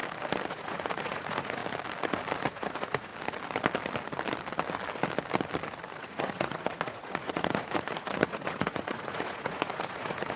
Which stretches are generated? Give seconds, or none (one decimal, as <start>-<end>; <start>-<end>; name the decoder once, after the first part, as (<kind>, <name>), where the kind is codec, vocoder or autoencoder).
0.5-1.6 (vocoder, Vocos); 2.4-3.1; 6.0-10.4